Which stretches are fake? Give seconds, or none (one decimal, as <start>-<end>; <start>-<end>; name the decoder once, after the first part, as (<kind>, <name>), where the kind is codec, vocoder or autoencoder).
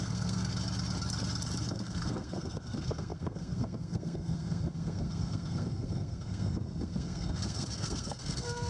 0.0-0.5 (codec, SNAC); 1.7-8.7